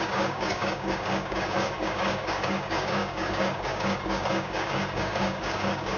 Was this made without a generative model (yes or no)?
no